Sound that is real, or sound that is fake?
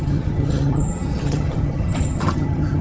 fake